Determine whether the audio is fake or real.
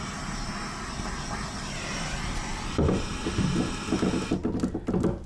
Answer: real